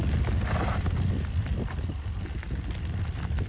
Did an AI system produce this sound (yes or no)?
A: no